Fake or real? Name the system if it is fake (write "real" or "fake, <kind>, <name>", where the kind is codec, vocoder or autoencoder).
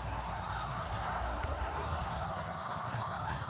fake, codec, SNAC